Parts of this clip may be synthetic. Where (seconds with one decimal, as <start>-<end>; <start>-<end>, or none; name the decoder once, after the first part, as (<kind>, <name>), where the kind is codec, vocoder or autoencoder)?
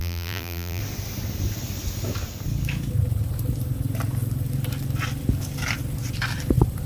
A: 0.0-0.8 (vocoder, BigVGAN v2)